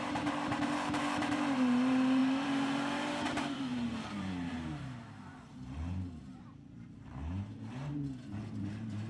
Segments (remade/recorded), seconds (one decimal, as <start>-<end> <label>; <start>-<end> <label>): 0.0-7.9 remade; 7.9-8.5 recorded; 8.5-9.1 remade